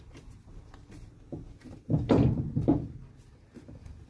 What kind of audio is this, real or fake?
real